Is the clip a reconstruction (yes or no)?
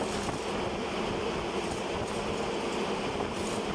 no